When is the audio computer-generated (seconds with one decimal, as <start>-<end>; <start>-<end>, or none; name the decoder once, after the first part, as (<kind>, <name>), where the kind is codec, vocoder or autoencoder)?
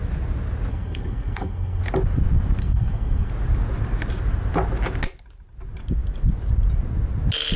0.7-1.8 (codec, SNAC); 2.6-3.3